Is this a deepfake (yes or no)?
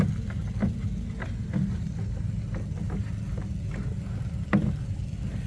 no